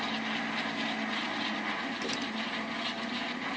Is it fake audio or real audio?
real